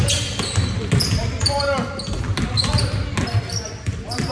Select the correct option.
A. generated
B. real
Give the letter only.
B